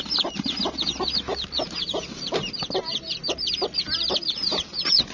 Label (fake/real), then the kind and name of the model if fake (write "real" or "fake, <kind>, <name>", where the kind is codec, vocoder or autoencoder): real